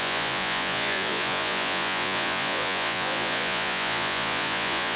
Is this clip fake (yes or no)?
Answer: yes